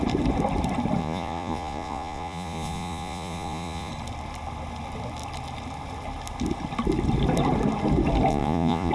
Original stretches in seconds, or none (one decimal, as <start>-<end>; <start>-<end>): 0.0-1.0; 3.9-8.3

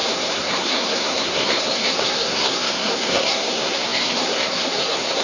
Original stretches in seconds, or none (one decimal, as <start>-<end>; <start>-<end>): none

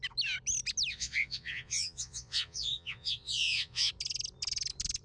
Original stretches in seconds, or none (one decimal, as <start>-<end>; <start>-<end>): 0.0-0.9; 3.9-5.0

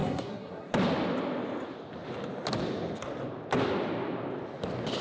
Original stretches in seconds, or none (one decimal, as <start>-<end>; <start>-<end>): 0.7-5.0